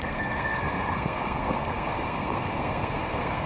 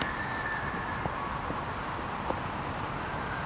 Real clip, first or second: second